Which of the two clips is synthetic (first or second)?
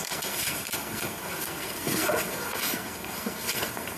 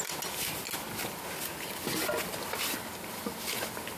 first